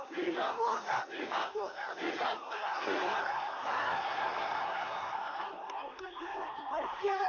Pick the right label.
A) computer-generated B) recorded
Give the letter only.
A